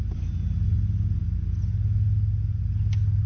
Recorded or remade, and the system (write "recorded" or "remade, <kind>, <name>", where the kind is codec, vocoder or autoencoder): recorded